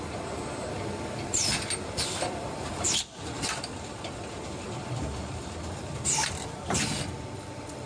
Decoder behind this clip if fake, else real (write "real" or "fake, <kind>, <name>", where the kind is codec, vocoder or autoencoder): fake, vocoder, BigVGAN v2